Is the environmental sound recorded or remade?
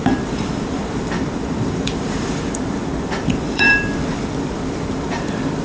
remade